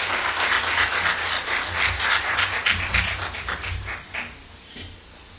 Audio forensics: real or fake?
real